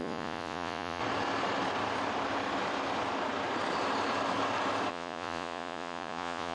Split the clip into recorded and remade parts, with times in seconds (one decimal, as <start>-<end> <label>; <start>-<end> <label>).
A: 0.0-1.0 remade; 1.0-4.9 recorded; 4.9-6.5 remade